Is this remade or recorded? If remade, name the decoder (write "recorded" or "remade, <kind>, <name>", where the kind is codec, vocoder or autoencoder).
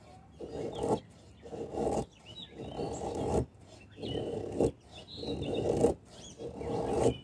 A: recorded